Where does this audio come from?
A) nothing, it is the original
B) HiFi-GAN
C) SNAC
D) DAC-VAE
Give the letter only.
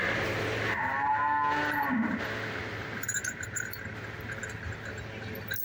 A